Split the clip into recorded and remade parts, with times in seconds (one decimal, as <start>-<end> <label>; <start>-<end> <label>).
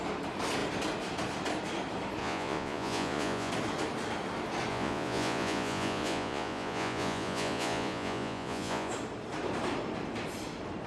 0.0-2.2 recorded; 2.2-3.5 remade; 3.5-4.7 recorded; 4.7-8.9 remade; 8.9-10.9 recorded